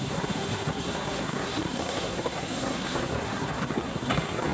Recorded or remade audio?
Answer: remade